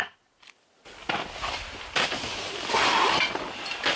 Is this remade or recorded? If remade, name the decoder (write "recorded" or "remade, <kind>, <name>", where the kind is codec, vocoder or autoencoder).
recorded